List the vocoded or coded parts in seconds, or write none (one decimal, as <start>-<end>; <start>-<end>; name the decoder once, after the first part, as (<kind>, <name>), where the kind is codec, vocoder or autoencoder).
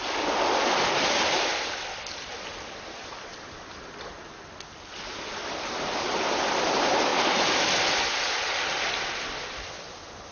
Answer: none